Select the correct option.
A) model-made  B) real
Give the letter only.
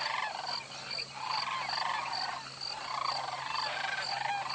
B